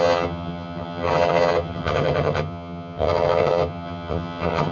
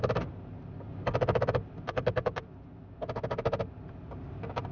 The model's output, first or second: first